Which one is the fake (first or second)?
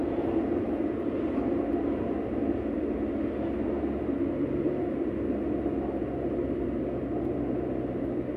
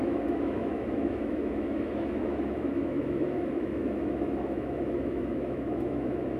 second